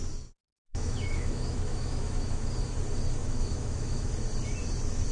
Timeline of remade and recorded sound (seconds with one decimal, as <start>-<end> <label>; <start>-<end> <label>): 0.0-0.7 recorded; 0.7-2.4 remade; 2.4-3.2 recorded; 3.2-4.1 remade; 4.1-5.1 recorded